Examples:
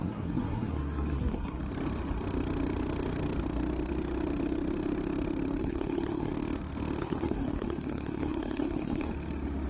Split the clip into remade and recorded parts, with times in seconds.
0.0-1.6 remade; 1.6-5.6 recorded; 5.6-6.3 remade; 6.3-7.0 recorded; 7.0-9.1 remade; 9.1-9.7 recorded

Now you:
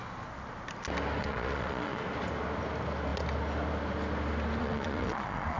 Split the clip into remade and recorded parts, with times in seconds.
0.0-1.2 recorded; 1.2-2.0 remade; 2.0-4.6 recorded; 4.6-5.6 remade

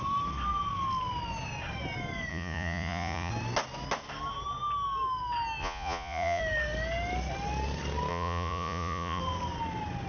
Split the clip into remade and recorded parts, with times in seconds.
0.0-2.3 recorded; 2.3-3.3 remade; 3.3-5.6 recorded; 5.6-6.4 remade; 6.4-8.1 recorded; 8.1-9.2 remade; 9.2-10.1 recorded